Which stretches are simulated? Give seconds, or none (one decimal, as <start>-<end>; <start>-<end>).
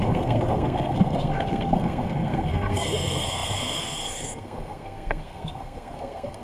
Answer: 0.0-6.4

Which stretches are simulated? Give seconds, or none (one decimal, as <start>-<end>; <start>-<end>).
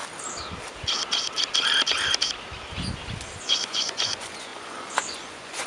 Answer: 3.4-5.7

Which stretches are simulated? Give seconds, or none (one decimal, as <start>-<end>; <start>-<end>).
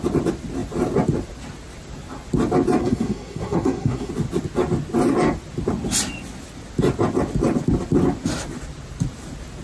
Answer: 2.8-4.1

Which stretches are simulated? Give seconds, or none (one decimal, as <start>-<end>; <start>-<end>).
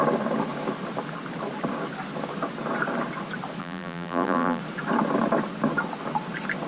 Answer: 3.6-4.6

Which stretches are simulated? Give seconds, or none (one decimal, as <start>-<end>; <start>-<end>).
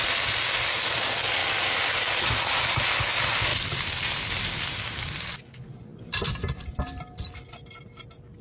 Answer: 3.5-4.4; 5.9-7.0